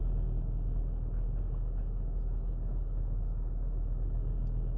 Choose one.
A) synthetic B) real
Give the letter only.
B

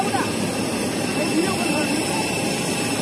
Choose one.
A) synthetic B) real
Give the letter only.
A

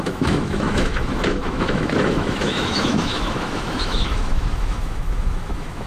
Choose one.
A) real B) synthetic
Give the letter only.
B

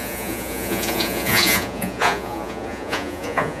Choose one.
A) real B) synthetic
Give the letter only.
B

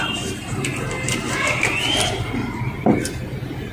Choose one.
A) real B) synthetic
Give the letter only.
A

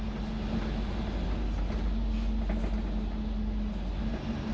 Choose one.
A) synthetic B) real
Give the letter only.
B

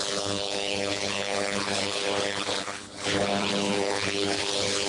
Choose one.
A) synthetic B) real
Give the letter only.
A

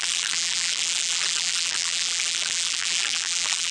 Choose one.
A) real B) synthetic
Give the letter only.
B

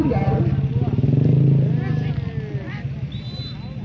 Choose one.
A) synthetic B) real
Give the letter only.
B